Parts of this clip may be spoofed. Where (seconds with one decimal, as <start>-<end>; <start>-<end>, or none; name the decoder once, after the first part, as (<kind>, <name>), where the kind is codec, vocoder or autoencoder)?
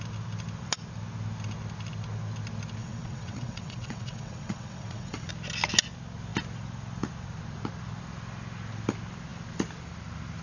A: 2.8-5.3 (vocoder, WaveNeXt)